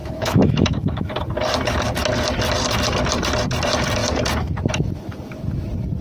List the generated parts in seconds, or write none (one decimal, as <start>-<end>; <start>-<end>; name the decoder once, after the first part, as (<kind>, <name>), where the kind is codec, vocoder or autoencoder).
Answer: 0.0-1.1 (autoencoder, DAC-VAE)